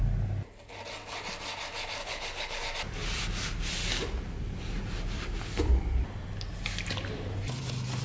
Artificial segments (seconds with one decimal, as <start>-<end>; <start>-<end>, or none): 2.0-2.6